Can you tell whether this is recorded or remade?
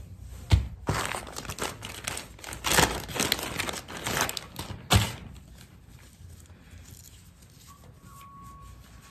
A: recorded